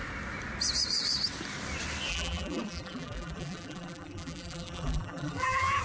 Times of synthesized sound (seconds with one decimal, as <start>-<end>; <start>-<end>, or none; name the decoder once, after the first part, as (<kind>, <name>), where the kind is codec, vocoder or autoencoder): 2.1-5.8 (vocoder, BigVGAN v2)